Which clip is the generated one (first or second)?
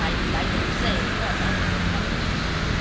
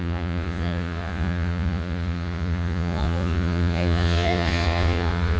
second